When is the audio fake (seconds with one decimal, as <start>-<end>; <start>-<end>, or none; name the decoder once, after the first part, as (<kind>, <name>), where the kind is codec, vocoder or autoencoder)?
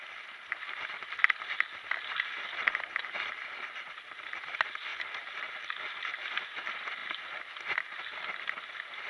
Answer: none